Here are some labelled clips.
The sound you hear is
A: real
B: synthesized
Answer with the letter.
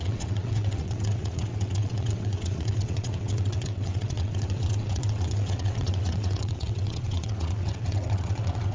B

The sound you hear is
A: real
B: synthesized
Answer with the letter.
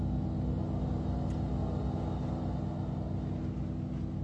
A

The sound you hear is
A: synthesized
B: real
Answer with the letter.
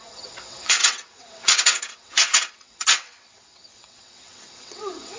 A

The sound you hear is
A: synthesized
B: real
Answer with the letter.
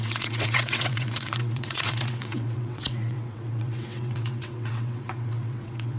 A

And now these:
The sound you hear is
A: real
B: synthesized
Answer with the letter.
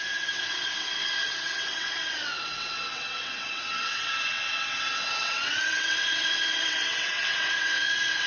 B